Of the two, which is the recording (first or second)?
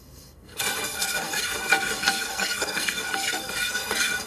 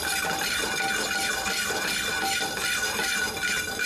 second